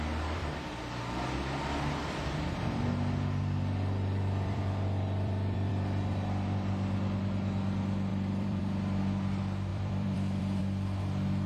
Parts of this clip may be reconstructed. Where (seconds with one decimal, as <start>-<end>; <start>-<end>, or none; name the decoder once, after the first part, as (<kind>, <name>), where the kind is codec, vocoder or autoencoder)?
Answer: 0.4-1.0 (vocoder, BigVGAN v2); 2.0-5.7; 8.1-8.6; 9.7-10.6